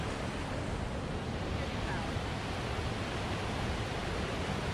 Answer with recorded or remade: recorded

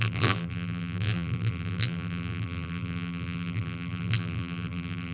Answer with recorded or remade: remade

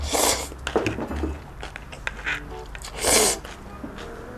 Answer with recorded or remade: recorded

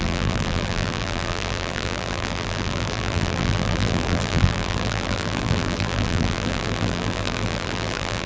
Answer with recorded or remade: remade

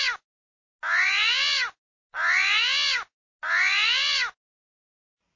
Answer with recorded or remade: recorded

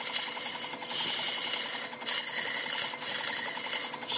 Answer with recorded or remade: recorded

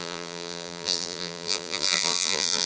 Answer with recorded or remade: remade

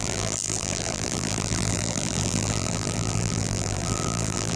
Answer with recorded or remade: remade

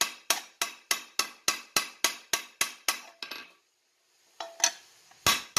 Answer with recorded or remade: recorded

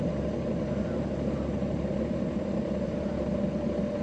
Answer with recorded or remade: recorded